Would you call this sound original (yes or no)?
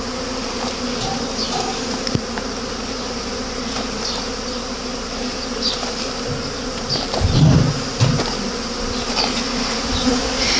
yes